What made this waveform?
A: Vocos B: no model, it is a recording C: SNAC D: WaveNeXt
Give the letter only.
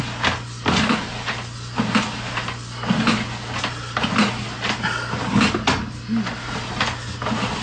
B